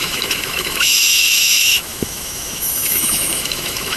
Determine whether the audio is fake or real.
fake